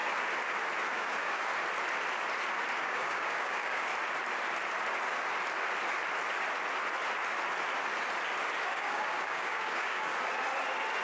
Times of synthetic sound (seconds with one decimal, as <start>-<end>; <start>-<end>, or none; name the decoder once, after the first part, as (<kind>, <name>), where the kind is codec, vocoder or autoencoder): 0.9-1.5 (codec, DAC); 2.8-3.9; 8.6-10.1